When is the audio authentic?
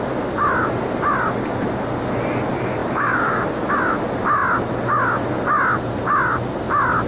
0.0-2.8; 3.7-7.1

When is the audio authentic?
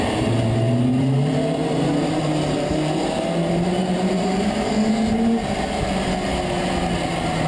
0.0-0.9; 4.7-7.5